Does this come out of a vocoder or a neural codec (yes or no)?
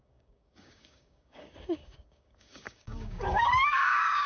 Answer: yes